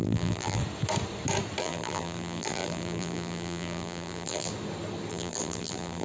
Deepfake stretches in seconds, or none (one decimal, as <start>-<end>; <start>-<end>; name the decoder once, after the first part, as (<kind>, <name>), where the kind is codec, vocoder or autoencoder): 0.0-0.6 (vocoder, BigVGAN v2); 1.6-4.5; 5.1-6.0